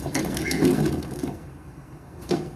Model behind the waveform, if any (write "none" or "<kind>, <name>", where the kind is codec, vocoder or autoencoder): codec, SNAC